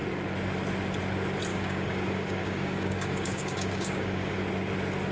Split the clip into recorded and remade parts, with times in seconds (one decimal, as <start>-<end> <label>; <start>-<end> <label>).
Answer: 0.0-1.5 recorded; 1.5-4.4 remade; 4.4-5.1 recorded